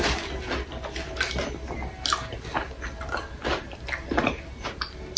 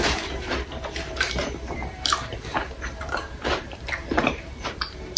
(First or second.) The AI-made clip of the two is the second